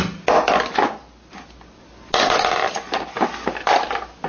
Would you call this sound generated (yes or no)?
no